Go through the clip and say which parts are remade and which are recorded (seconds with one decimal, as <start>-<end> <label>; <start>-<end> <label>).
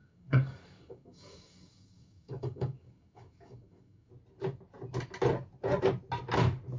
0.0-4.1 remade; 4.1-6.8 recorded